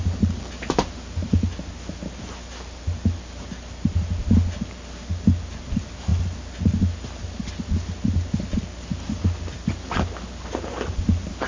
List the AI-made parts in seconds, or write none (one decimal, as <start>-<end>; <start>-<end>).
none